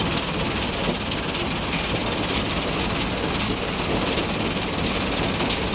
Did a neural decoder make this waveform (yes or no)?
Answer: no